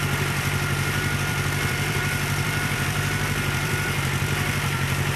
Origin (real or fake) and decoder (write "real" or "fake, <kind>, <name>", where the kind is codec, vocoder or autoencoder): fake, vocoder, BigVGAN v2